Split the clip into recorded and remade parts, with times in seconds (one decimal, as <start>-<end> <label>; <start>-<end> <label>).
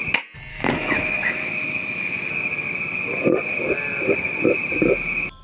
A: 0.0-0.5 recorded; 0.5-2.3 remade; 2.3-5.4 recorded